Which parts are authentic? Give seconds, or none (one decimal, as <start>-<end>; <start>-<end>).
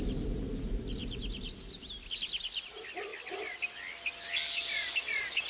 0.0-1.0; 2.1-5.5